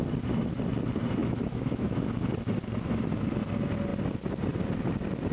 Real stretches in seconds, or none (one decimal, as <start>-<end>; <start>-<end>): 0.0-1.2; 2.2-5.3